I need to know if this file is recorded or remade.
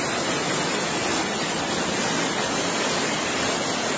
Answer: recorded